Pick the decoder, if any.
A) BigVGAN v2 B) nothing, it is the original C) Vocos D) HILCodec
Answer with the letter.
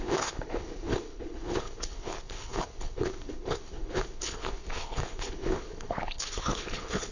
D